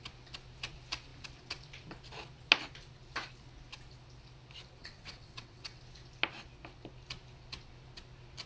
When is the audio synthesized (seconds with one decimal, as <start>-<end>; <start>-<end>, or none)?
4.8-5.8